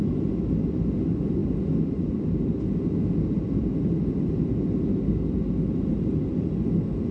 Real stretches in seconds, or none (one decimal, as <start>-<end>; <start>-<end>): 0.0-7.1